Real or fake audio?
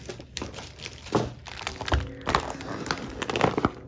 real